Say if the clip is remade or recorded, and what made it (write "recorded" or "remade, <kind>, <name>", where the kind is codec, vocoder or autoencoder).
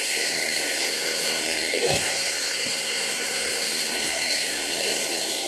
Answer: remade, codec, SNAC